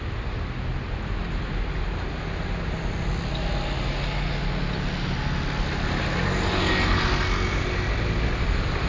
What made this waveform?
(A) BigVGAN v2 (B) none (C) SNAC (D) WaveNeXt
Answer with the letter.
B